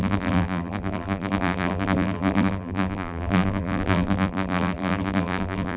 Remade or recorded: remade